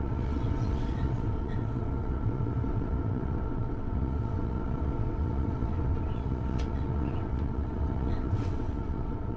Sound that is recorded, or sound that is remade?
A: remade